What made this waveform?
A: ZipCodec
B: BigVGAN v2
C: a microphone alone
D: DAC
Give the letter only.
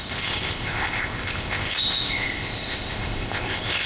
A